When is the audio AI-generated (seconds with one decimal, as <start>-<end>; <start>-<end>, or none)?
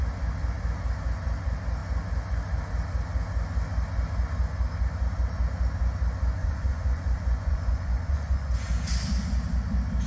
6.4-8.5